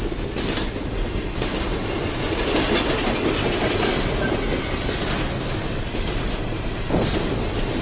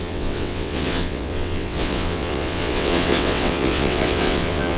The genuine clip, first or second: first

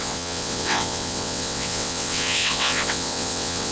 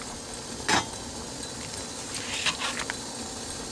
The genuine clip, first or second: second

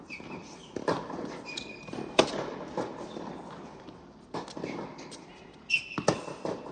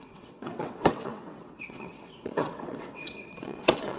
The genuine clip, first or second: first